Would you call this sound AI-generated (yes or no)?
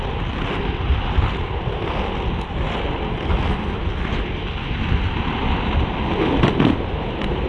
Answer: no